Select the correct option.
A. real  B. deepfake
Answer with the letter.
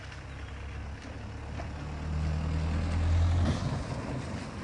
A